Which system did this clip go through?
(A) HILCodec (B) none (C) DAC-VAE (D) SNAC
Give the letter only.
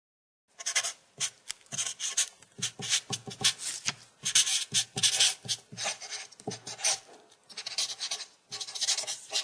B